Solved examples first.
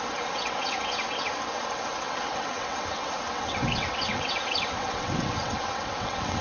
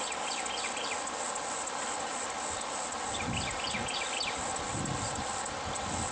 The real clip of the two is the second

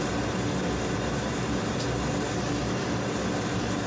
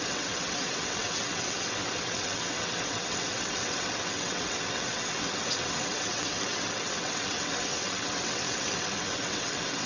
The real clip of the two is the first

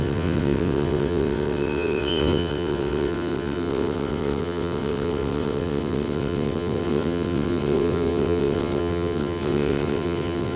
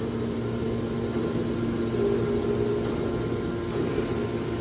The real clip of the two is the second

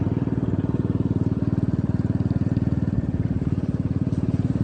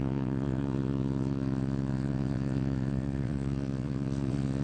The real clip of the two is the first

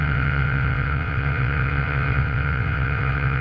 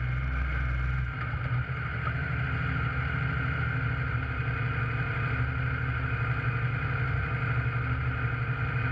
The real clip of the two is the second